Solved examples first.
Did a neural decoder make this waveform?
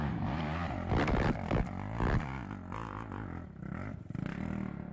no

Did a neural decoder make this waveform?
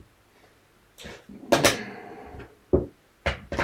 no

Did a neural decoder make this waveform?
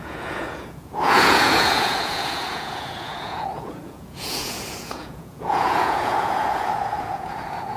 yes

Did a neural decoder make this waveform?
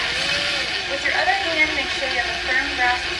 no